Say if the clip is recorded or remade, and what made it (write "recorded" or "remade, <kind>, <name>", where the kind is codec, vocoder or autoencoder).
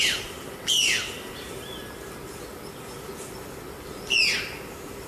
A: recorded